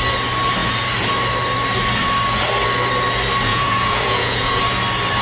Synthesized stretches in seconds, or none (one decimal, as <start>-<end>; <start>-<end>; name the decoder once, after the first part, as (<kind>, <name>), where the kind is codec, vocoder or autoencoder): 3.5-4.6 (vocoder, Vocos)